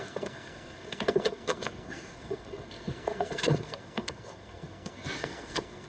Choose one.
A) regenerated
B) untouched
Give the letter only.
A